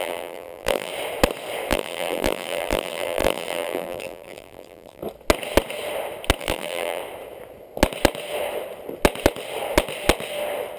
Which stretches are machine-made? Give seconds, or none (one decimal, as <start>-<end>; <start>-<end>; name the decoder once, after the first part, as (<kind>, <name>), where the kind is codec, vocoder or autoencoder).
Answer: 0.0-0.9 (vocoder, BigVGAN v2); 1.7-5.0; 6.4-7.0